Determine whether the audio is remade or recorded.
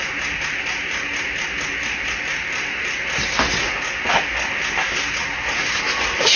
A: recorded